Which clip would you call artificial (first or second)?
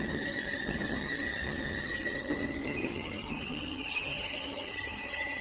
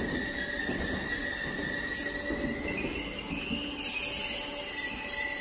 first